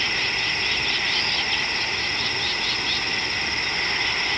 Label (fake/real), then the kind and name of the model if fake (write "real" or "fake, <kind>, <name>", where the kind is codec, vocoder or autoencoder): real